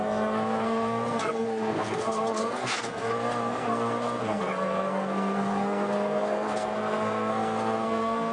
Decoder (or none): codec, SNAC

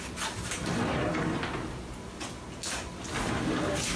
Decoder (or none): none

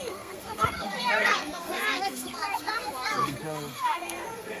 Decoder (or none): codec, SNAC